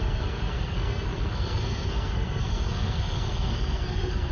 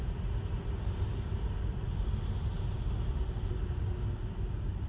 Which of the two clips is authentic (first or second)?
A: second